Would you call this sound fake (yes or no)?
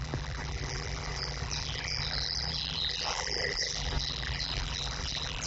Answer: yes